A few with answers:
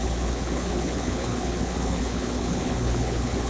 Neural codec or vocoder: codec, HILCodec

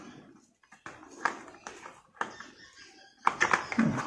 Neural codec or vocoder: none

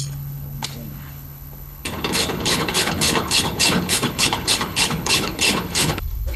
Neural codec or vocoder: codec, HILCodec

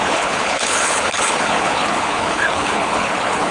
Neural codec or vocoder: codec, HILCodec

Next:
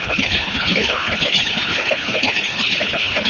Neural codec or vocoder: codec, HILCodec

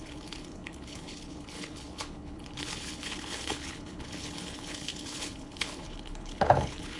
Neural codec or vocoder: codec, HILCodec